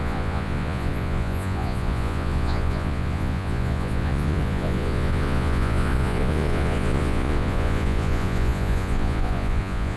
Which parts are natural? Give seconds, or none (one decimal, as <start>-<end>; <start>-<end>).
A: none